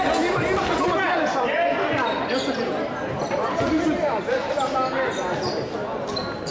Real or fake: real